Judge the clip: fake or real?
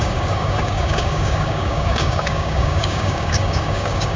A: fake